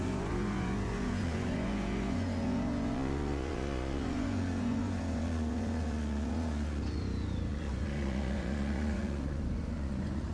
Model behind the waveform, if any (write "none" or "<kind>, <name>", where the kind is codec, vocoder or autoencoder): vocoder, Vocos